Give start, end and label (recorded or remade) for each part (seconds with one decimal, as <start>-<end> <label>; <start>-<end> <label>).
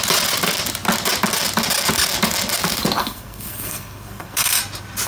0.0-3.0 recorded; 3.0-4.6 remade; 4.6-5.1 recorded